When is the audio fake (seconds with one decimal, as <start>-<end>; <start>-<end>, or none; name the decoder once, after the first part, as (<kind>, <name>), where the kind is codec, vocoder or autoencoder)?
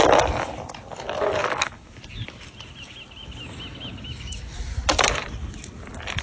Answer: none